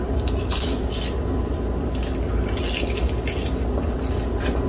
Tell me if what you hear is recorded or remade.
recorded